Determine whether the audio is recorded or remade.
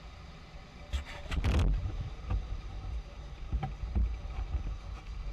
remade